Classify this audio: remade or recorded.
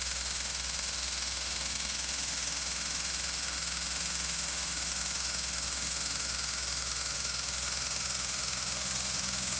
remade